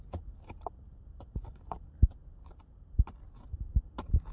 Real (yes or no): yes